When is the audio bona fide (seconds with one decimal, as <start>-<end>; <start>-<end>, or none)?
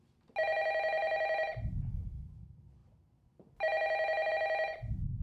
0.0-1.0; 1.5-5.2